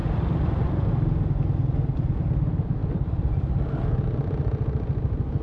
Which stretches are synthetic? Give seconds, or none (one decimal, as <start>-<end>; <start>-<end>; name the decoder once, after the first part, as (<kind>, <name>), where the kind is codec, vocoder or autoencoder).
0.0-0.9 (vocoder, BigVGAN v2); 2.8-3.6